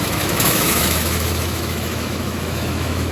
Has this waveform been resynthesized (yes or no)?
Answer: yes